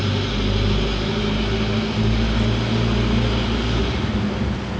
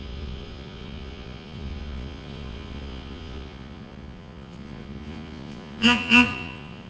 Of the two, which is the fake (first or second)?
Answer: second